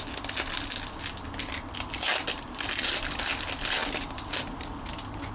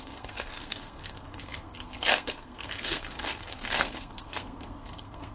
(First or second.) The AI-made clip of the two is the second